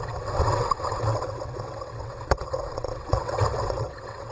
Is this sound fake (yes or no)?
yes